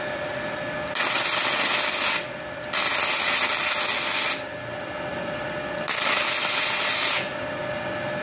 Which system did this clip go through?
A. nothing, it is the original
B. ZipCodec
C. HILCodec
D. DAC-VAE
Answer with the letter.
A